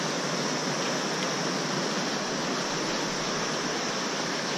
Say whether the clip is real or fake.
real